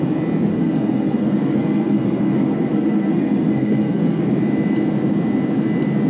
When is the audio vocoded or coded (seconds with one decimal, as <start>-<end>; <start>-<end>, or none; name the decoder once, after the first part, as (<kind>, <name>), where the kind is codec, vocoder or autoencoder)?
0.5-4.2 (codec, SNAC)